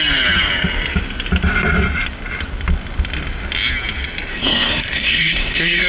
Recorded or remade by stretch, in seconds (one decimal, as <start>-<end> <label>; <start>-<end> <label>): 0.0-4.3 recorded; 4.3-5.9 remade